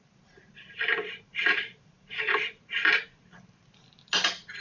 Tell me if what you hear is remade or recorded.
recorded